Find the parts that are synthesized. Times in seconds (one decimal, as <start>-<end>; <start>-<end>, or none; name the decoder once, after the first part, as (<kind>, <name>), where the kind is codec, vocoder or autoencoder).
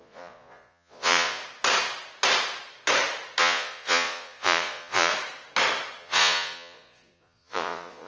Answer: 0.0-1.4 (vocoder, Vocos); 3.4-5.1; 6.0-8.1